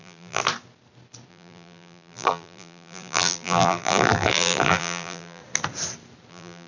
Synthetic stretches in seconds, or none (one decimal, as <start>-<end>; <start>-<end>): 0.0-0.4; 1.3-5.4; 6.3-6.7